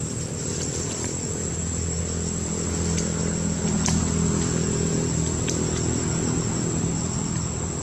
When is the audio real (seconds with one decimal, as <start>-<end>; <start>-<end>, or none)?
0.0-7.8